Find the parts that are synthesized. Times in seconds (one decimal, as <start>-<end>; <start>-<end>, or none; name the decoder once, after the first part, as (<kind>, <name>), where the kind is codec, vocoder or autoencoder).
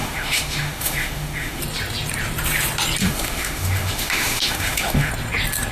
0.0-1.6 (autoencoder, DAC-VAE); 3.0-5.1